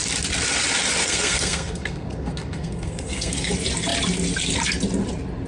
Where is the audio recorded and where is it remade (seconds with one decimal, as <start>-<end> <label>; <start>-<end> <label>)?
0.0-1.0 recorded; 1.0-3.5 remade; 3.5-5.5 recorded